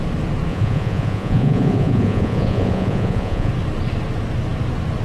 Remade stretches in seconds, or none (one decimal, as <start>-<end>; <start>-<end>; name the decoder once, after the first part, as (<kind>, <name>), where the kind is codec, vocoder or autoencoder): 0.5-3.5 (vocoder, Vocos)

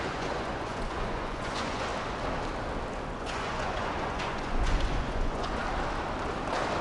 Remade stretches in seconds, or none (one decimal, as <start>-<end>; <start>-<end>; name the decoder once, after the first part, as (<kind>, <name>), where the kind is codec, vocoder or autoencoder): 0.0-1.9 (vocoder, Vocos); 3.1-5.6

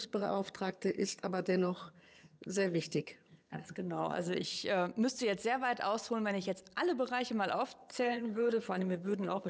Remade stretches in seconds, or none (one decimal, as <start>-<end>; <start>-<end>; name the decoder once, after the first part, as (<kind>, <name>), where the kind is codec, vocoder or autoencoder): 0.0-4.6 (vocoder, HiFi-GAN); 7.8-9.5

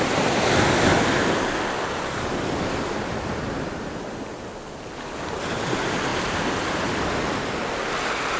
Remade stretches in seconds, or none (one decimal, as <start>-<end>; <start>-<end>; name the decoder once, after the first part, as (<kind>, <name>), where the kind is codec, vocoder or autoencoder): none

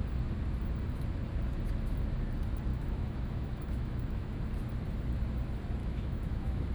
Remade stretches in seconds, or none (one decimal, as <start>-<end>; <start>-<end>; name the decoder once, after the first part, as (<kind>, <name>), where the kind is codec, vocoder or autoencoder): 2.7-4.3 (autoencoder, DAC-VAE); 5.8-6.7

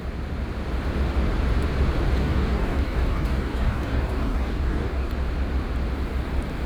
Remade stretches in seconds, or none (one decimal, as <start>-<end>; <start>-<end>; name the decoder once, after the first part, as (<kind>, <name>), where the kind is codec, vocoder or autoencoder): 2.2-5.1 (codec, DAC)

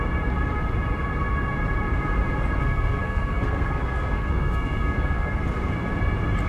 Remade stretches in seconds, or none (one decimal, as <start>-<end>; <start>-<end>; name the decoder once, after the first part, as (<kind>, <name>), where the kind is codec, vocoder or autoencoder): 2.6-5.4 (codec, SNAC)

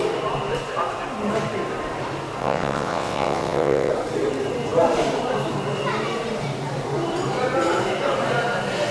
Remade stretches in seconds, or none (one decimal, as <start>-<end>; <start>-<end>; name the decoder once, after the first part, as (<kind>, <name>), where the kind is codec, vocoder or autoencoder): 2.4-3.9 (vocoder, WaveNeXt)